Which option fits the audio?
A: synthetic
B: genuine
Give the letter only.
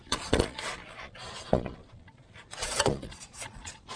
A